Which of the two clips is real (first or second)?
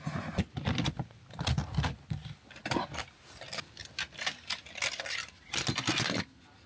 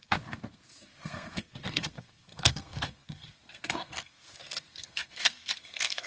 first